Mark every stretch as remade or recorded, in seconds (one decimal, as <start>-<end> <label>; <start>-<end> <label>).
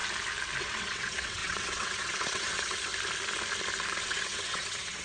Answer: 0.0-0.6 recorded; 0.6-2.9 remade; 2.9-4.0 recorded; 4.0-5.0 remade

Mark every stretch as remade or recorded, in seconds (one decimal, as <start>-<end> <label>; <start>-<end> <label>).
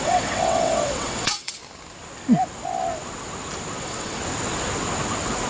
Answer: 0.0-1.6 remade; 1.6-3.8 recorded; 3.8-4.2 remade; 4.2-5.5 recorded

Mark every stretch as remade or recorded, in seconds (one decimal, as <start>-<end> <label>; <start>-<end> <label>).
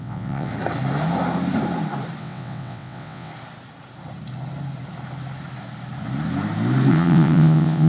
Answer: 0.0-0.5 remade; 0.5-2.2 recorded; 2.2-3.3 remade; 3.3-6.9 recorded; 6.9-7.9 remade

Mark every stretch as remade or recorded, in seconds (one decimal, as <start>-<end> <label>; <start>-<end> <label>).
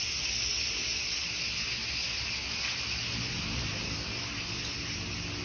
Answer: 0.0-5.4 recorded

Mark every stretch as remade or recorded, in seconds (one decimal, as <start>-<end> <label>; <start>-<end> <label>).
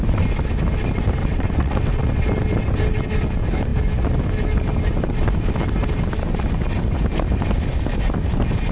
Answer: 0.0-1.2 recorded; 1.2-2.2 remade; 2.2-8.7 recorded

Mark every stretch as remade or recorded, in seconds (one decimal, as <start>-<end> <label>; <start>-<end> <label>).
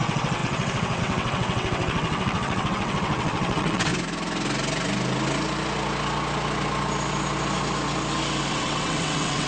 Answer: 0.0-3.9 remade; 3.9-8.5 recorded; 8.5-9.5 remade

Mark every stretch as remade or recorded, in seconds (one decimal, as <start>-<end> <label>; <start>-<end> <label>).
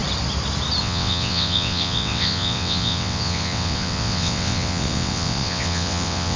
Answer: 0.0-0.8 recorded; 0.8-6.4 remade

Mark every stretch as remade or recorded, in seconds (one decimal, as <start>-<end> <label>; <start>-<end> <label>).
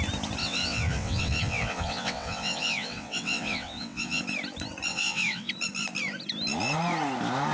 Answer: 0.0-0.4 recorded; 0.4-4.2 remade; 4.2-4.9 recorded; 4.9-5.5 remade; 5.5-7.5 recorded